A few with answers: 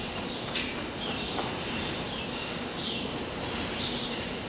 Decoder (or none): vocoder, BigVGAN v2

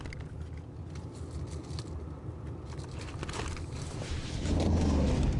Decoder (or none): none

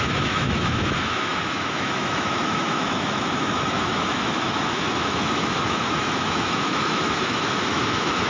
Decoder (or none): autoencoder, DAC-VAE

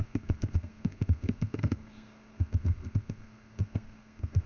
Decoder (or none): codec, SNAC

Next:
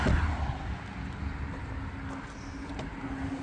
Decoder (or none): none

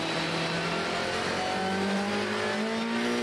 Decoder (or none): vocoder, BigVGAN v2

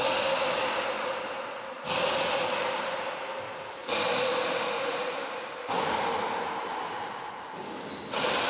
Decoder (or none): none